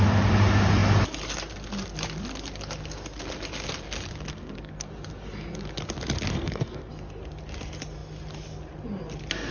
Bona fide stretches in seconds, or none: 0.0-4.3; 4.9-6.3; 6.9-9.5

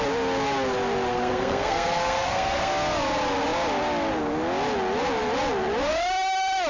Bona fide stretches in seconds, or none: 0.0-1.1; 2.7-6.7

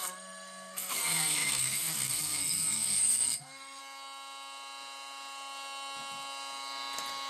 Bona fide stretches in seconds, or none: 3.8-7.3

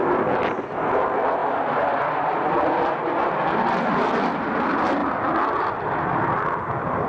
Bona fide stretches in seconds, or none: 0.0-7.1

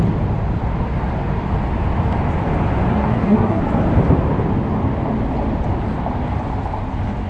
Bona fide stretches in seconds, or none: 0.0-2.9; 3.6-7.3

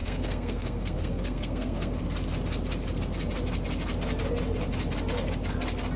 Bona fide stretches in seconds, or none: 2.0-6.0

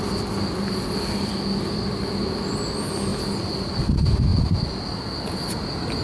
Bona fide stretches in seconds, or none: 0.0-6.0

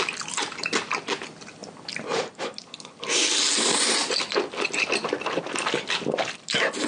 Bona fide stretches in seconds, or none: 0.0-6.9